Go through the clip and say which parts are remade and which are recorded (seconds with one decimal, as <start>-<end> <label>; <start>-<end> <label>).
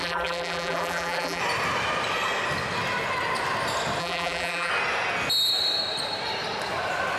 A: 0.0-1.4 remade; 1.4-4.0 recorded; 4.0-4.7 remade; 4.7-7.2 recorded